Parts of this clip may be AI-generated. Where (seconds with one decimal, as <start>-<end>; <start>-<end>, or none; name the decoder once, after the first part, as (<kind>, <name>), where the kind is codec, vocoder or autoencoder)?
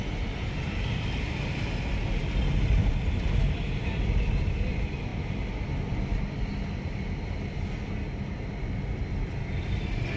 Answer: 2.8-3.6 (vocoder, BigVGAN v2)